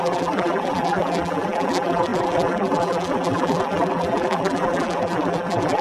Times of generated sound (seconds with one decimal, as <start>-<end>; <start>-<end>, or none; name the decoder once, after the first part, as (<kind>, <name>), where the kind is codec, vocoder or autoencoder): 0.0-5.8 (vocoder, BigVGAN v2)

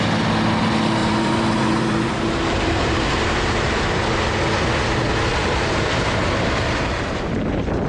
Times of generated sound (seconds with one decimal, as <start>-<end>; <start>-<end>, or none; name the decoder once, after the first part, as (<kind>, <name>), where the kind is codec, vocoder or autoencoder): 1.0-3.7 (vocoder, BigVGAN v2); 5.3-7.3

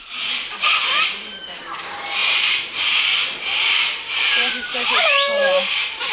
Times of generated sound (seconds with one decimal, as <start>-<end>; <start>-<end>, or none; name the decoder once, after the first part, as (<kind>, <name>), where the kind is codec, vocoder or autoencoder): 0.8-1.6 (vocoder, BigVGAN v2); 2.2-6.1

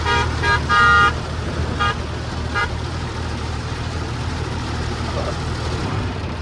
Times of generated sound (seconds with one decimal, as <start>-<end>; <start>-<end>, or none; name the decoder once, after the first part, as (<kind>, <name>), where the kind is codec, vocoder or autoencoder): 2.6-5.1 (vocoder, BigVGAN v2); 5.8-6.4

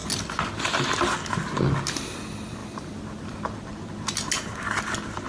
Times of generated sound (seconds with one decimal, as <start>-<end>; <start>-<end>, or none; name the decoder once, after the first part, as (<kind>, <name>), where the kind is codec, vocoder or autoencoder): 2.6-3.7 (vocoder, BigVGAN v2)